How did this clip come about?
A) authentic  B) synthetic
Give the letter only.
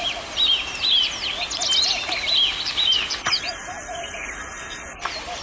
A